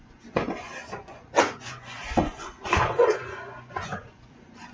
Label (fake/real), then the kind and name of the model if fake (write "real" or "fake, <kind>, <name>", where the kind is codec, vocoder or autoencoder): fake, vocoder, Vocos